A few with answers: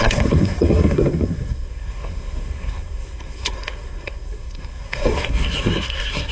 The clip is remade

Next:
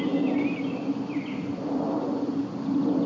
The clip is recorded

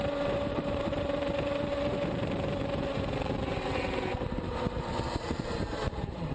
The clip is remade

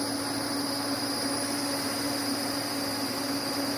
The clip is recorded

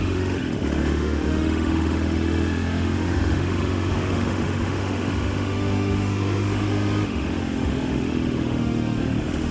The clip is remade